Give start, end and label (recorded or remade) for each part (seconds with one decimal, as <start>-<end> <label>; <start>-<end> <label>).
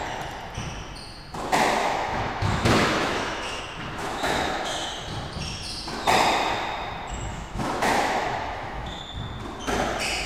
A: 0.0-1.8 recorded; 1.8-3.6 remade; 3.6-4.0 recorded; 4.0-4.9 remade; 4.9-7.3 recorded; 7.3-9.0 remade; 9.0-10.3 recorded